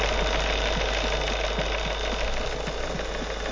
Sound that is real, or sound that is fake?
real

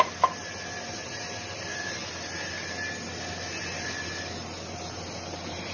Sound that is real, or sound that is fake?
real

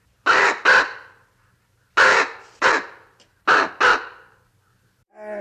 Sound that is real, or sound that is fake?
real